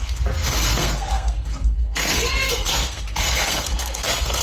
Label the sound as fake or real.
fake